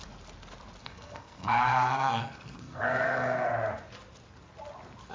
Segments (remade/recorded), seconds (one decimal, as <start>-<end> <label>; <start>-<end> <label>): 0.0-0.8 recorded; 0.8-3.5 remade; 3.5-5.1 recorded